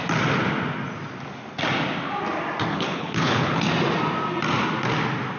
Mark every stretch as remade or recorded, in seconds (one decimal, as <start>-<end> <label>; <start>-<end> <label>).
0.0-2.7 recorded; 2.7-3.6 remade; 3.6-5.4 recorded